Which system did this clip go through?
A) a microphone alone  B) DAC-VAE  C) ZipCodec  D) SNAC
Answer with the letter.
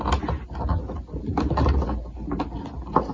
A